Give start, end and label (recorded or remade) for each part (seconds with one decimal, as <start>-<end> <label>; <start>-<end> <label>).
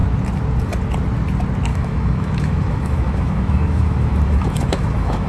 0.0-1.7 recorded; 1.7-5.3 remade